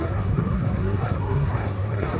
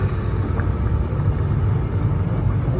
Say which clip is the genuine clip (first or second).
second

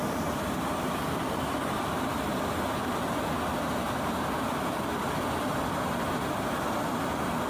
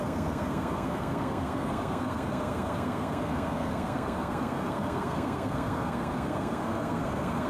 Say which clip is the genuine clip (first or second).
first